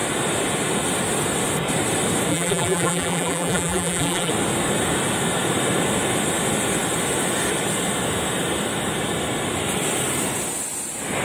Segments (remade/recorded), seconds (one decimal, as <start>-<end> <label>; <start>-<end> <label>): 0.0-2.3 recorded; 2.3-4.3 remade; 4.3-11.2 recorded